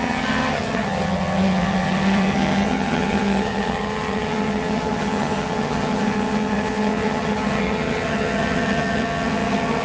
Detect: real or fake fake